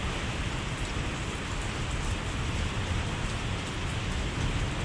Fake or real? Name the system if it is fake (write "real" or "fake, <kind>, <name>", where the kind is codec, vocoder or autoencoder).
real